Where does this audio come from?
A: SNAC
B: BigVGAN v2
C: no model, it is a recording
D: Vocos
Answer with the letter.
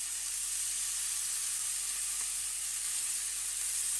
C